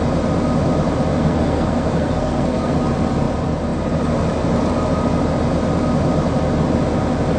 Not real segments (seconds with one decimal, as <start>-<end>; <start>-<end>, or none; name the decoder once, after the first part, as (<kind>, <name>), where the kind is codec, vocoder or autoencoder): 1.1-2.8 (codec, SNAC)